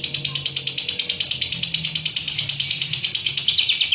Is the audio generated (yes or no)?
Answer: no